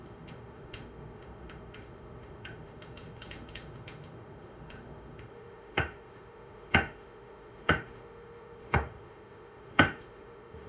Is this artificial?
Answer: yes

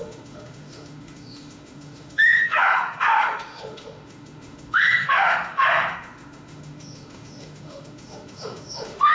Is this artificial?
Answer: yes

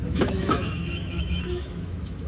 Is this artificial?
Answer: yes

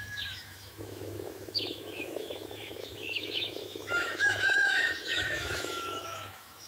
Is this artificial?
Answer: yes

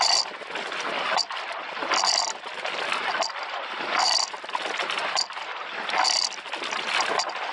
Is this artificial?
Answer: no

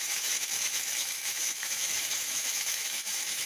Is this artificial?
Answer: yes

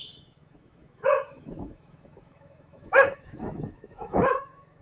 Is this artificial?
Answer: yes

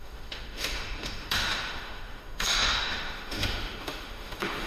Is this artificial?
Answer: yes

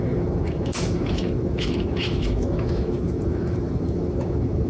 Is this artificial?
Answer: yes